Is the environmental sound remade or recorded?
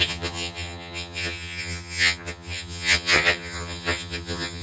remade